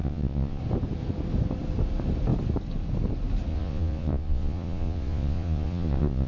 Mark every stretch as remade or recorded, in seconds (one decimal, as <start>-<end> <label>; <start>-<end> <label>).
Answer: 0.0-0.6 remade; 0.6-3.5 recorded; 3.5-6.3 remade